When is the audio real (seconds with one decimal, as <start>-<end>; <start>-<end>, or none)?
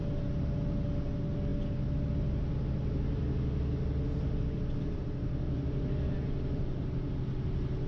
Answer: 0.0-7.9